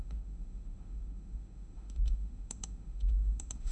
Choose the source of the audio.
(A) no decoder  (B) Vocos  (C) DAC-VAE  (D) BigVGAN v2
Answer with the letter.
C